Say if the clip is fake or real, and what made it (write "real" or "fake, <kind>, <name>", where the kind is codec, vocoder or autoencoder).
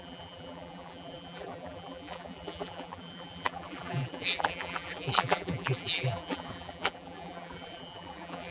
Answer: fake, vocoder, BigVGAN v2